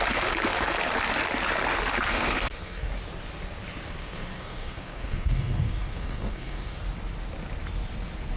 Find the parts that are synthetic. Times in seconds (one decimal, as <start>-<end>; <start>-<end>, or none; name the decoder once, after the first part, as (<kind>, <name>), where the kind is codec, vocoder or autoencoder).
2.1-2.9 (codec, SNAC); 4.0-6.8